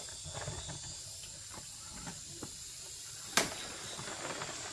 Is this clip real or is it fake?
real